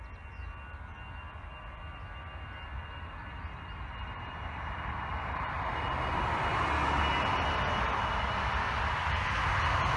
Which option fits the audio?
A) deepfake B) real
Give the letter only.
B